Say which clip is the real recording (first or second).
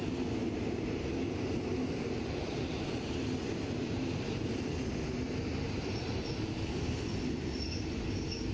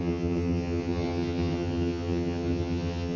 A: first